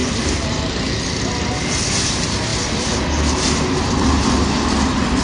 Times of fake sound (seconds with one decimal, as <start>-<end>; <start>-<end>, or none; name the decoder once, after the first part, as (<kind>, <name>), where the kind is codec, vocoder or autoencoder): none